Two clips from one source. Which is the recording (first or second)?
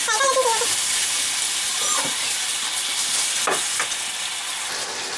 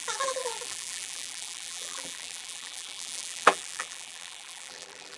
first